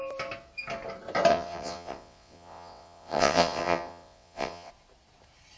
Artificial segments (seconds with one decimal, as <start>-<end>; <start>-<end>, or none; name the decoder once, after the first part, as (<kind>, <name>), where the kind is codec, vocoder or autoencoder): 1.3-4.7 (vocoder, WaveNeXt)